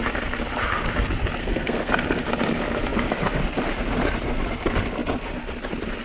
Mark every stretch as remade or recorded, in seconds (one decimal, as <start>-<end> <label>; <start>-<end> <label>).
0.0-1.4 recorded; 1.4-1.9 remade; 1.9-6.0 recorded